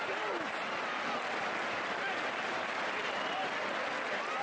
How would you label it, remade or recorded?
recorded